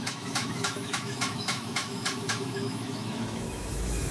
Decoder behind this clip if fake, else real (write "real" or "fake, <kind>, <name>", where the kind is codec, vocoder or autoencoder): fake, autoencoder, DAC-VAE